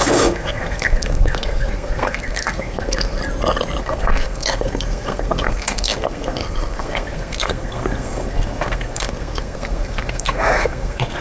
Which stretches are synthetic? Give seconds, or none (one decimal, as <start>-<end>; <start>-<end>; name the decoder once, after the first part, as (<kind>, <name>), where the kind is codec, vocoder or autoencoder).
0.0-3.2 (codec, SNAC); 3.8-11.2

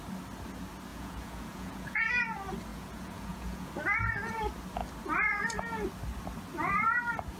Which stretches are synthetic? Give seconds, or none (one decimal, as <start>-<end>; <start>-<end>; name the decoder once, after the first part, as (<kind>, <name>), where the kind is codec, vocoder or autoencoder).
0.9-2.1 (vocoder, Vocos); 2.7-3.7

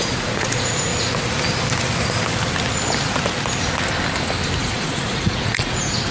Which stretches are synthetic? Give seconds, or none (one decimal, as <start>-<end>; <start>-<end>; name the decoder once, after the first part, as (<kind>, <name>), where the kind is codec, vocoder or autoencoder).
0.0-0.9 (vocoder, Vocos); 4.6-6.1

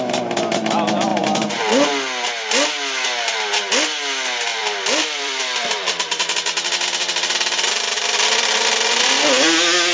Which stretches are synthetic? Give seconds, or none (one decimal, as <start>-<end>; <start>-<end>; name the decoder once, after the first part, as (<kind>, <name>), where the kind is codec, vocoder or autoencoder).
1.1-1.7 (vocoder, BigVGAN v2); 4.5-5.7

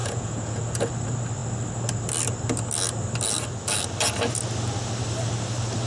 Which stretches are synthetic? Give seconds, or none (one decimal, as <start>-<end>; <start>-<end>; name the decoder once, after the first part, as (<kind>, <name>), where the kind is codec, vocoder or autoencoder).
0.0-0.9 (vocoder, Vocos)

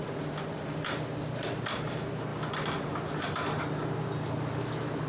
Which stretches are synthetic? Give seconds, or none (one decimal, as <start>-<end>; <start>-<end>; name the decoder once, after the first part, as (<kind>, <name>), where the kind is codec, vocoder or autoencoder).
none

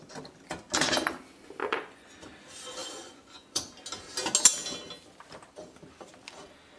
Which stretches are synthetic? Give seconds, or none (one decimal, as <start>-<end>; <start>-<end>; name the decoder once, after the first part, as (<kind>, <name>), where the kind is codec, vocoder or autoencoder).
1.6-2.1 (vocoder, Vocos); 2.8-3.6